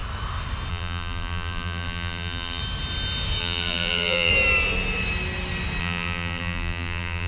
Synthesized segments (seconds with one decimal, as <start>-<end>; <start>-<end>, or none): 0.7-2.6; 3.4-4.3; 5.8-7.3